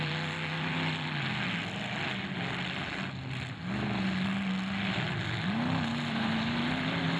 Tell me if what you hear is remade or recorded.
recorded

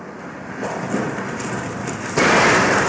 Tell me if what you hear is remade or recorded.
recorded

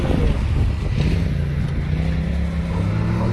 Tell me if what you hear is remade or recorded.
recorded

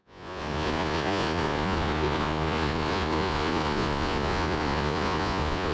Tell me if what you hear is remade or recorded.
remade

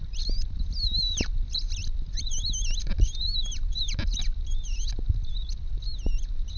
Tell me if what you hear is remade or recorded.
recorded